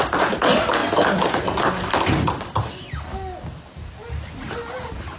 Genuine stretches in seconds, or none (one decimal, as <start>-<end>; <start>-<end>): 0.0-5.2